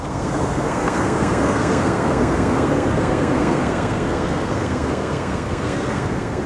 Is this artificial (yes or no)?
yes